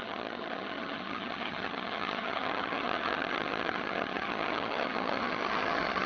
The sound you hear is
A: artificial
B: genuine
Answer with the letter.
A